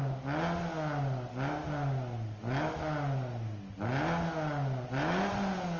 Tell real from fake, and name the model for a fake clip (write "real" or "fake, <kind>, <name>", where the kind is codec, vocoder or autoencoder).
real